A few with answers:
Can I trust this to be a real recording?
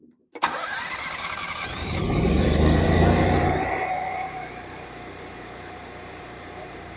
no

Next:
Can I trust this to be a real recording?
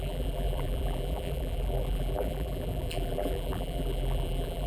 no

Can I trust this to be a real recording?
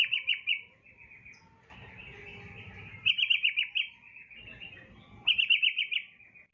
yes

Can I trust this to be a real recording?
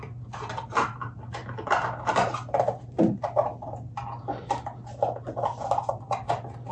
yes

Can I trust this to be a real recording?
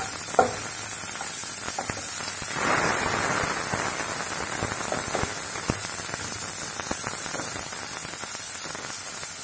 yes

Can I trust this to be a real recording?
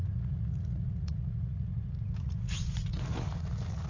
no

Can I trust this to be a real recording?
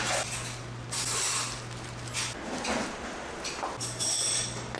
yes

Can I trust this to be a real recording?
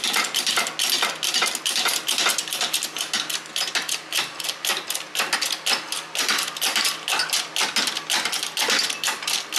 yes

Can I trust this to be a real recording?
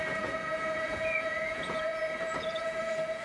no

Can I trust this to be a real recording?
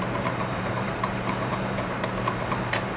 no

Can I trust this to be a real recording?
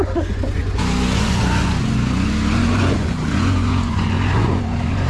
no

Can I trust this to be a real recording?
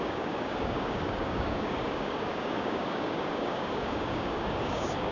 no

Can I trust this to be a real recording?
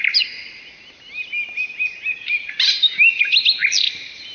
yes